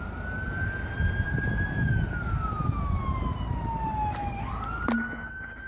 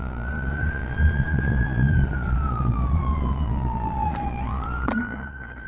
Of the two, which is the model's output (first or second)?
second